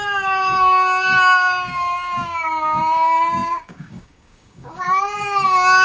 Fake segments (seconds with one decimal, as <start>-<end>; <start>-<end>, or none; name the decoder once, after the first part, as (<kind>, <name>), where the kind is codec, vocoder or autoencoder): 0.0-5.8 (codec, DAC)